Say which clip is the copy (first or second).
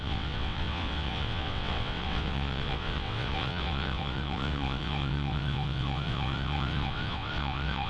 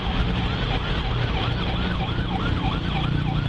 first